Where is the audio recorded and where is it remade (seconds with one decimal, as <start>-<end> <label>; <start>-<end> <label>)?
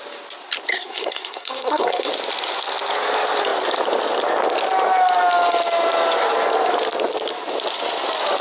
0.0-0.7 recorded; 0.7-2.1 remade; 2.1-8.4 recorded